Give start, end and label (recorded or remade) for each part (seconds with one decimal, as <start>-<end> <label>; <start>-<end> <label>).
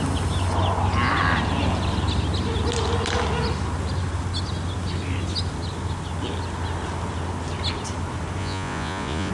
0.0-8.4 recorded; 8.4-9.3 remade